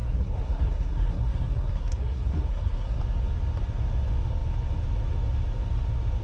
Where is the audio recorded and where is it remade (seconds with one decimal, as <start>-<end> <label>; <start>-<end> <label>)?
0.0-3.0 remade; 3.0-6.2 recorded